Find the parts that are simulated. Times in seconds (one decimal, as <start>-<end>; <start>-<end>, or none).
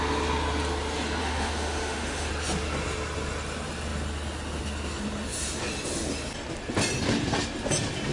1.2-2.3